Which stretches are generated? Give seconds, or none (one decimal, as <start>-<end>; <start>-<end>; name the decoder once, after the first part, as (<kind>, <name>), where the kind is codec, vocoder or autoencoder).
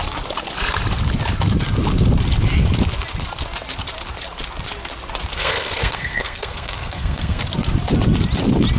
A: 5.3-7.4 (codec, SNAC)